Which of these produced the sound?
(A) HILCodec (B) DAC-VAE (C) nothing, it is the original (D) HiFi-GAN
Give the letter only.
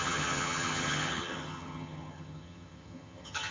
D